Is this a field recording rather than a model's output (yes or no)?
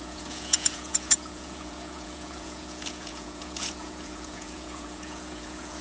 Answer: no